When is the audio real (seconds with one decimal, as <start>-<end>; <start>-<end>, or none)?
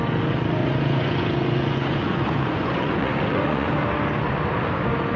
0.0-0.6; 3.7-5.2